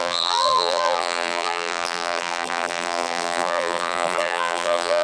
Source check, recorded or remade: remade